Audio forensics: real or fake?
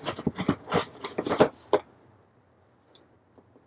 real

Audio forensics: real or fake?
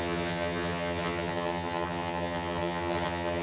fake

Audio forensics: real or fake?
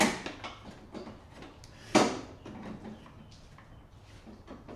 real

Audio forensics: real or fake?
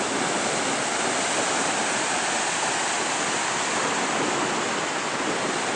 real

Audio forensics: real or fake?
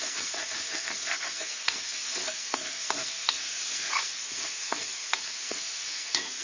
fake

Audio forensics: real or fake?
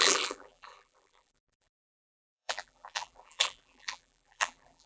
fake